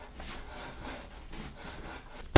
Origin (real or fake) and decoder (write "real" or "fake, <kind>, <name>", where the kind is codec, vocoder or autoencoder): real